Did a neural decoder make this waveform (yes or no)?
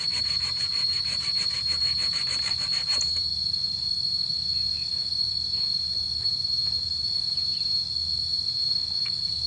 yes